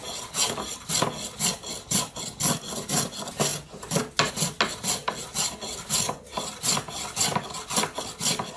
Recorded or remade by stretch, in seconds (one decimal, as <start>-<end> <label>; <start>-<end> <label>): 0.0-8.6 recorded